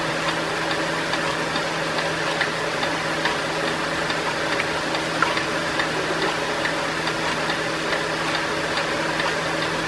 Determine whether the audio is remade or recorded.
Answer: recorded